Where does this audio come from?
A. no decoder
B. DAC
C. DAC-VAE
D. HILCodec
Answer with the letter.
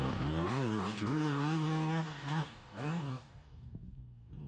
B